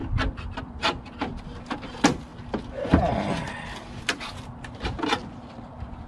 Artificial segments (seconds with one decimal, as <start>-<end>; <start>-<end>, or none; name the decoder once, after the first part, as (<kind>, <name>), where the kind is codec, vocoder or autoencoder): 0.6-6.1 (vocoder, BigVGAN v2)